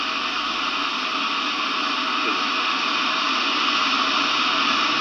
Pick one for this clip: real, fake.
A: real